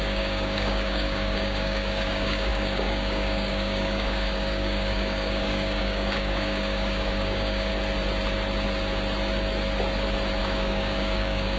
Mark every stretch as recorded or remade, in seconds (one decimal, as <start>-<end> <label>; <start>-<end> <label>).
0.0-7.7 remade; 7.7-10.4 recorded; 10.4-11.6 remade